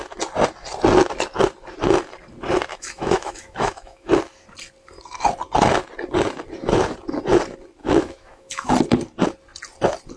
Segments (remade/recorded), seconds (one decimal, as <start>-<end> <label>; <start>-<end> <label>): 0.0-2.7 recorded; 2.7-4.1 remade; 4.1-7.8 recorded; 7.8-8.7 remade; 8.7-10.2 recorded